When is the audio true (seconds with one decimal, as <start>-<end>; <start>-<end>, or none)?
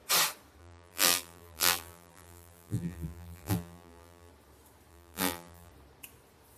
0.0-0.6; 4.3-4.9; 5.7-6.6